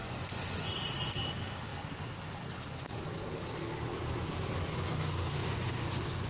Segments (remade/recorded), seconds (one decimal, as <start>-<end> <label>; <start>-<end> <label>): 0.0-0.7 remade; 0.7-5.4 recorded; 5.4-6.3 remade